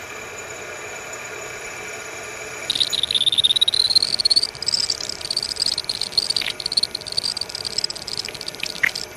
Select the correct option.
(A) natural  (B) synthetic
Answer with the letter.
A